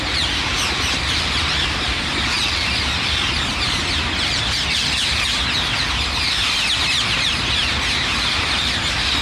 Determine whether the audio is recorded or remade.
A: recorded